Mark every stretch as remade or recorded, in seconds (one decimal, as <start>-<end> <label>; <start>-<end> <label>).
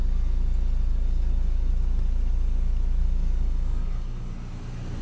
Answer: 0.0-0.9 recorded; 0.9-1.7 remade; 1.7-3.0 recorded; 3.0-4.3 remade; 4.3-5.0 recorded